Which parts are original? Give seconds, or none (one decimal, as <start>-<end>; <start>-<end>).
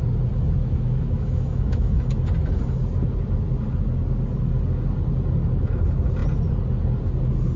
0.0-0.6; 2.3-7.6